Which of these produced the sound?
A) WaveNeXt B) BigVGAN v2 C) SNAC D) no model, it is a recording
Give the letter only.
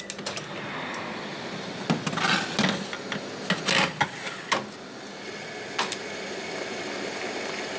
D